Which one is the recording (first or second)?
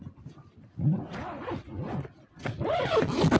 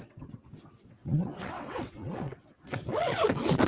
first